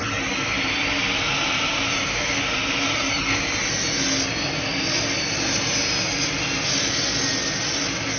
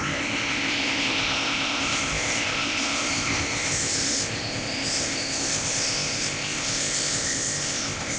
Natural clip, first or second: first